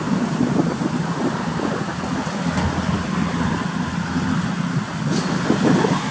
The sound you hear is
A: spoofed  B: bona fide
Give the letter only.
B